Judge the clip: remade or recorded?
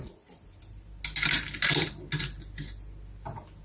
recorded